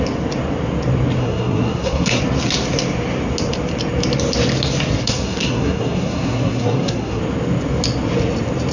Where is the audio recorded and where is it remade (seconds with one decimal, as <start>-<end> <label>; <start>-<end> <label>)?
0.0-1.2 recorded; 1.2-2.2 remade; 2.2-5.0 recorded; 5.0-7.2 remade; 7.2-8.7 recorded